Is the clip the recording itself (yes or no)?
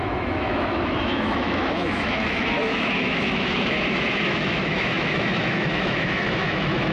no